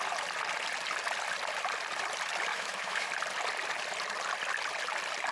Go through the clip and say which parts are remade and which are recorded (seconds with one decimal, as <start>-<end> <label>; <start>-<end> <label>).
0.0-2.5 recorded; 2.5-3.1 remade; 3.1-5.3 recorded